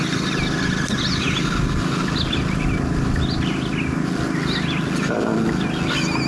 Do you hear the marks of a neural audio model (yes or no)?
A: no